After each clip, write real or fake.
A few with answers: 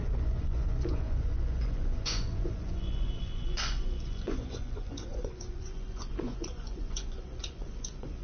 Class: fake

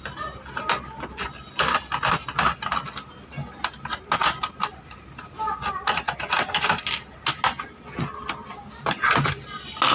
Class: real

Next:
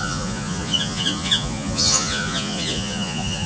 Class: fake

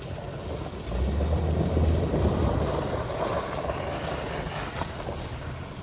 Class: real